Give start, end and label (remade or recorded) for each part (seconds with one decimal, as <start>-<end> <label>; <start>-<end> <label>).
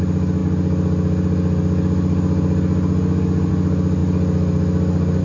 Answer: 0.0-5.2 recorded